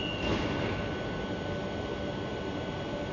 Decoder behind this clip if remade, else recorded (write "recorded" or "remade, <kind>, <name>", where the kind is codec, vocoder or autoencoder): recorded